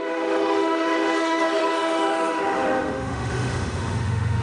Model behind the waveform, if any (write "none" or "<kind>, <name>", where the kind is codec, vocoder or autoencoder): autoencoder, DAC-VAE